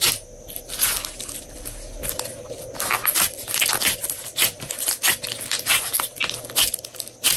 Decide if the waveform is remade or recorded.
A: recorded